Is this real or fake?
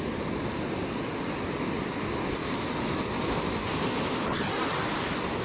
real